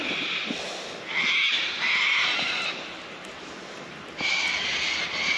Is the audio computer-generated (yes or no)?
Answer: no